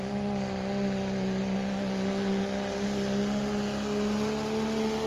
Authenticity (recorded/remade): recorded